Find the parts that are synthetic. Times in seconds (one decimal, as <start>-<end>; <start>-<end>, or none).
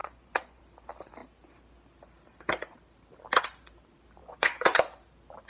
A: 0.0-0.6; 4.2-4.8